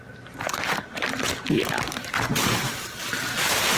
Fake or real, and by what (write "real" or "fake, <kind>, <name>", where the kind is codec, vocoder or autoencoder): real